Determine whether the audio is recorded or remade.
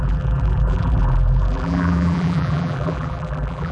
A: remade